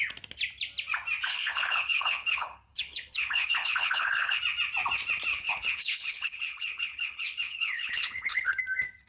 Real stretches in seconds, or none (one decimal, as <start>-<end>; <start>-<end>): 0.0-1.3; 4.4-5.3; 8.6-9.1